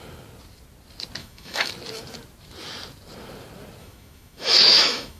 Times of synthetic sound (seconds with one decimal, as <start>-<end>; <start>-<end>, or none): 1.2-1.7; 3.8-5.2